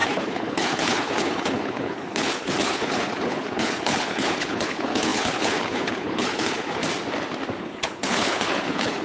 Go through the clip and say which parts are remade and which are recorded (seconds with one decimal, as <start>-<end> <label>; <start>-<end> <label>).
0.0-6.8 remade; 6.8-7.6 recorded; 7.6-9.0 remade